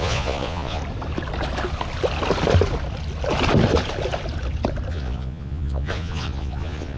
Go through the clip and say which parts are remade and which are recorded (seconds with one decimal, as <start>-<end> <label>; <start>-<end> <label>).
0.0-0.8 remade; 0.8-4.9 recorded; 4.9-7.0 remade